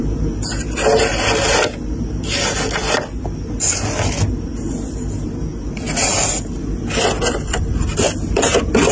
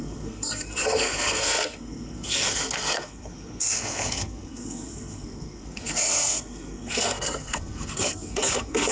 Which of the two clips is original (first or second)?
first